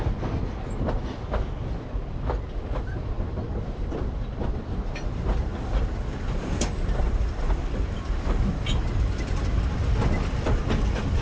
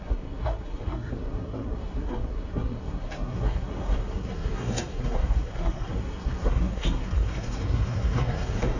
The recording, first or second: first